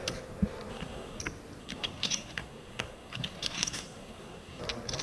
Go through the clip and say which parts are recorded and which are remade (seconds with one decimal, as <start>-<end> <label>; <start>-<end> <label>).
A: 0.0-0.7 recorded; 0.7-1.2 remade; 1.2-1.6 recorded; 1.6-4.6 remade; 4.6-5.0 recorded

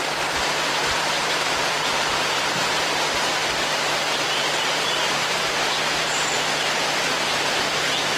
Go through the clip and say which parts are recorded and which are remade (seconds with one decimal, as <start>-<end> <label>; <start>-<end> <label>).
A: 0.0-8.2 remade

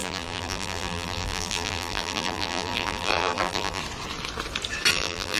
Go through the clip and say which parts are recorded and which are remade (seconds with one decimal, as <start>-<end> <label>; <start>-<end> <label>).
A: 0.0-3.8 remade; 3.8-4.9 recorded; 4.9-5.4 remade

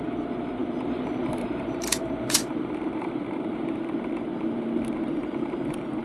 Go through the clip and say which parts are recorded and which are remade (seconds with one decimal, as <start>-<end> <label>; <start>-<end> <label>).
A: 0.0-6.0 remade